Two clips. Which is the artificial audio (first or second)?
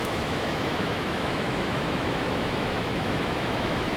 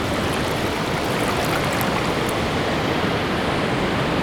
first